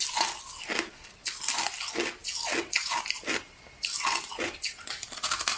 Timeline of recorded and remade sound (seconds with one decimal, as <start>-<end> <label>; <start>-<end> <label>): 0.0-5.6 recorded